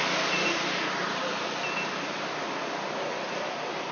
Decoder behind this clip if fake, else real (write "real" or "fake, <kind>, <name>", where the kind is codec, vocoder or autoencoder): real